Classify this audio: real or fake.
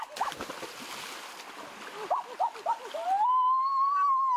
real